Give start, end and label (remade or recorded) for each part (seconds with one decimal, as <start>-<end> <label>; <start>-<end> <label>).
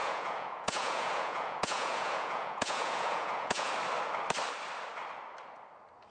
0.0-3.7 remade; 3.7-6.1 recorded